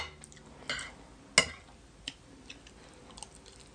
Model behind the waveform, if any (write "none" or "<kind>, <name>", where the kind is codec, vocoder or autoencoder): none